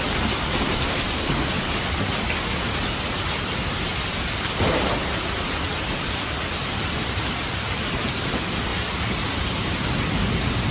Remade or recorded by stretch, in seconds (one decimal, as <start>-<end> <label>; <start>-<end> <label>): 0.0-10.7 recorded